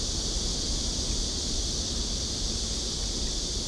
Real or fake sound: real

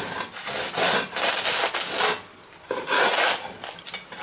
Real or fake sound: real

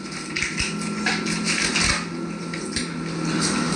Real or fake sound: real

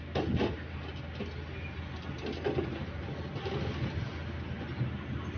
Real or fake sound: real